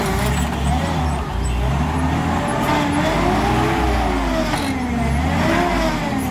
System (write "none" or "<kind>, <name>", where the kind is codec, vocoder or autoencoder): none